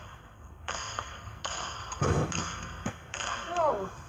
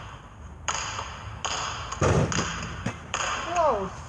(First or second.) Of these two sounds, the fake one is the first